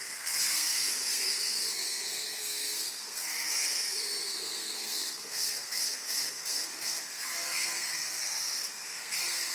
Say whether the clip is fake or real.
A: fake